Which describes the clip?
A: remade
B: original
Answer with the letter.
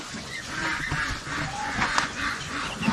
A